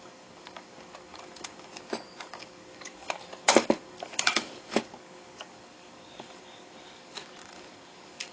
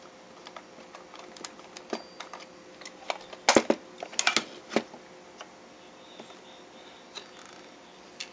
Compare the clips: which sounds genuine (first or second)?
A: second